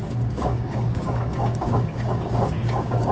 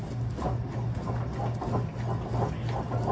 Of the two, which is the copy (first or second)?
first